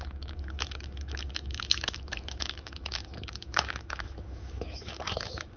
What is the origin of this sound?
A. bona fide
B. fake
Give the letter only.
B